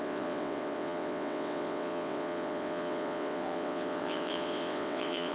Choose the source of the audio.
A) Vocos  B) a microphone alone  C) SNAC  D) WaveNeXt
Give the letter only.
D